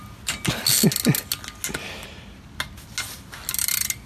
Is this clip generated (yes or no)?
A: no